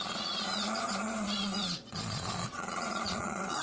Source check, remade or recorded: remade